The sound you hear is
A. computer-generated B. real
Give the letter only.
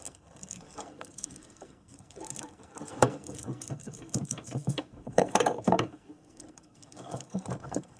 A